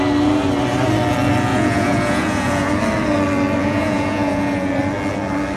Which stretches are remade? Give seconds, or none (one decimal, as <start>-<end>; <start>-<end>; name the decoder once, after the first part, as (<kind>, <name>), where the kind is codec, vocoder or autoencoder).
1.5-2.7 (vocoder, Vocos); 3.6-4.7